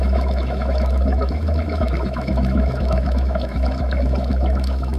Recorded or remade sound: remade